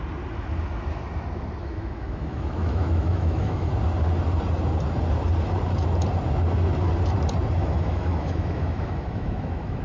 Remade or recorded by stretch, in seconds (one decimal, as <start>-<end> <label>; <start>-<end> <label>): 0.0-1.6 recorded; 1.6-3.7 remade; 3.7-7.6 recorded; 7.6-9.8 remade